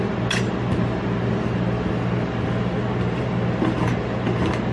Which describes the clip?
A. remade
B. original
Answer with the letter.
B